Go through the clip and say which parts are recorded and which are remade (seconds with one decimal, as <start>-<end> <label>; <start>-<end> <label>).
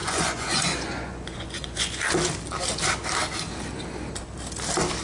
0.0-2.0 remade; 2.0-5.0 recorded